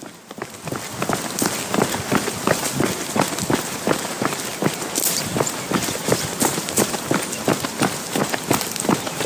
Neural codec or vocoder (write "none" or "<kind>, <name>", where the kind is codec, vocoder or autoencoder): none